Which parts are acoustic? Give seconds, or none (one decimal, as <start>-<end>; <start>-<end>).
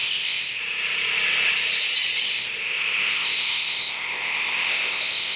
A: 0.6-2.3